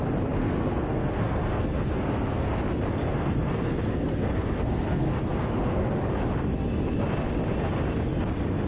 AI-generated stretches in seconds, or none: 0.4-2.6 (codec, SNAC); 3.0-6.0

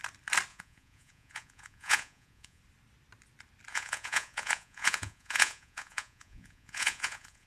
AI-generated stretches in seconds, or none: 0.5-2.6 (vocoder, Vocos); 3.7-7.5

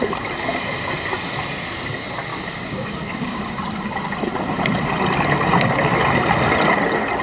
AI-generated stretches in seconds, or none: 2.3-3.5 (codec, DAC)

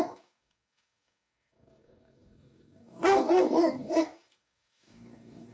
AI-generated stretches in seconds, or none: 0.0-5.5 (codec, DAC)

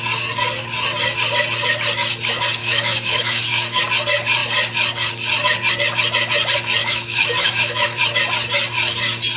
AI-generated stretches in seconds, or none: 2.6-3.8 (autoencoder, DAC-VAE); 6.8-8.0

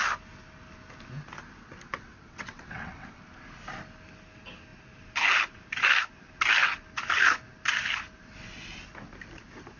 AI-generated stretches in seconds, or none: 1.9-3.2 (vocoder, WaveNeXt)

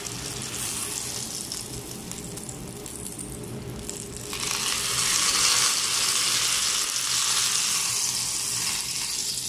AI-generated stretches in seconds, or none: none

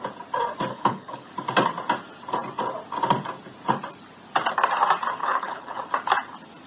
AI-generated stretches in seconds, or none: 0.7-1.3 (codec, HILCodec); 5.2-5.8